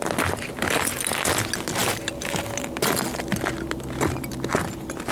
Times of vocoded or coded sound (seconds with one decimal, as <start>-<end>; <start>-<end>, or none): none